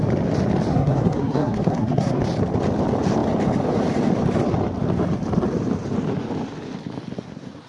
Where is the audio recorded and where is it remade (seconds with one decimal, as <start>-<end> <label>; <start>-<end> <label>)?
0.0-0.7 recorded; 0.7-2.2 remade; 2.2-7.7 recorded